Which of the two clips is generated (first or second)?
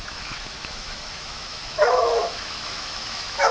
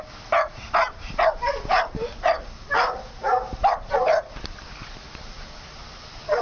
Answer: first